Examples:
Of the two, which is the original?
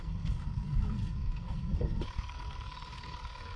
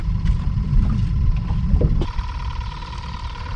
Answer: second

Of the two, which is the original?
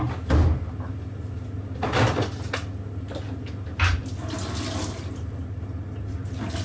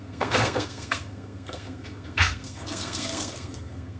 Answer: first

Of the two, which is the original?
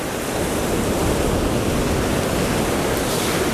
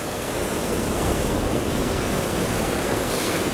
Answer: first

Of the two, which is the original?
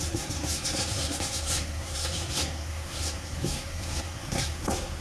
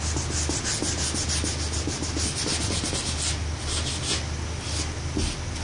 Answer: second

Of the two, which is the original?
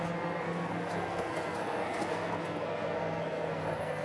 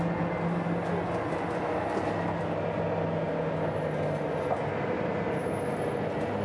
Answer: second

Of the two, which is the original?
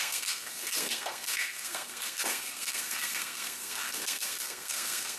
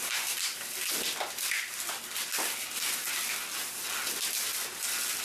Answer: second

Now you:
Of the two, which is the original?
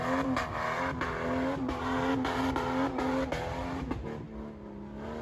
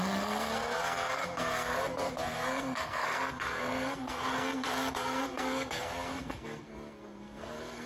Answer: first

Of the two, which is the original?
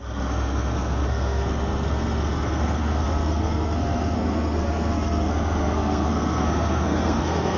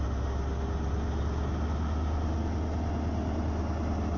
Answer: second